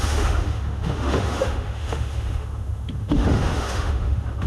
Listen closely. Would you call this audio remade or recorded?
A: remade